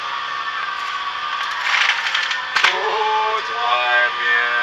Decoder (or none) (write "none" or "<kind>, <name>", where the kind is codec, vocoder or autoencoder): none